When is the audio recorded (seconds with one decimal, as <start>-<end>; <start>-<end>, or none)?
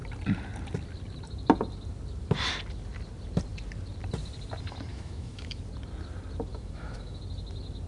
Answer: 0.0-4.9; 5.6-6.5; 7.2-7.9